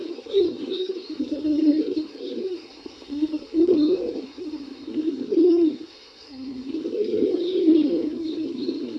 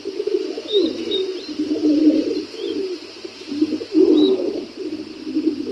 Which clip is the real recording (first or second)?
second